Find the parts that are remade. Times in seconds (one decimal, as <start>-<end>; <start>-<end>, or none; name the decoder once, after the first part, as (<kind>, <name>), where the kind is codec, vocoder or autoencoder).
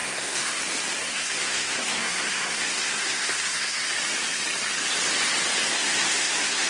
0.0-0.6 (codec, SNAC); 1.0-3.9; 5.7-6.7